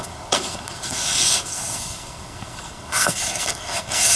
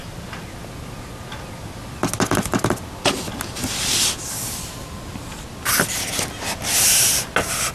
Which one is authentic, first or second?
second